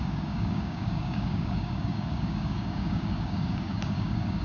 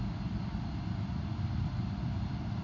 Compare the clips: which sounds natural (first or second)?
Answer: second